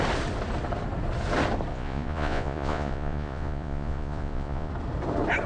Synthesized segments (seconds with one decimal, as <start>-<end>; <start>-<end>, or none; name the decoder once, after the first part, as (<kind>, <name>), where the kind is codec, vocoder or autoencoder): 1.7-4.7 (vocoder, Vocos)